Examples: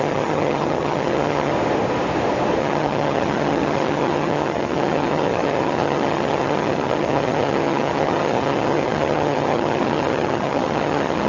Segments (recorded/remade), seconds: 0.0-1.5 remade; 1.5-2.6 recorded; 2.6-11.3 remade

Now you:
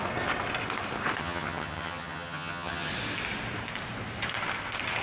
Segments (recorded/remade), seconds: 0.0-1.2 recorded; 1.2-2.9 remade; 2.9-5.0 recorded

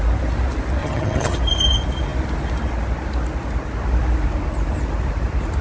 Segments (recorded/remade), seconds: 0.0-0.8 recorded; 0.8-1.4 remade; 1.4-5.6 recorded

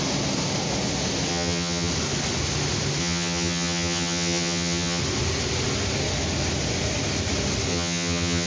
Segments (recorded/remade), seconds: 0.0-1.3 recorded; 1.3-1.9 remade; 1.9-3.0 recorded; 3.0-5.0 remade; 5.0-7.7 recorded; 7.7-8.5 remade

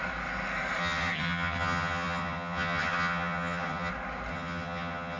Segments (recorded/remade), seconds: 0.0-0.8 recorded; 0.8-3.9 remade; 3.9-4.3 recorded; 4.3-5.2 remade

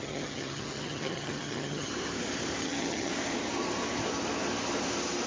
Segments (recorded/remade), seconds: 0.0-1.9 remade; 1.9-2.6 recorded; 2.6-3.1 remade; 3.1-5.3 recorded

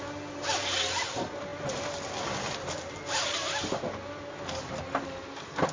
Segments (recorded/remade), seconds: 0.0-5.7 recorded

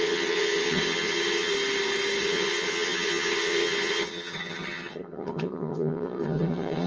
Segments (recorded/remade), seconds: 0.0-1.5 remade; 1.5-2.2 recorded; 2.2-6.9 remade